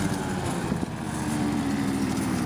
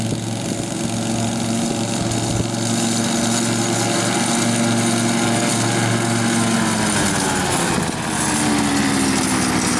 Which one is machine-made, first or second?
first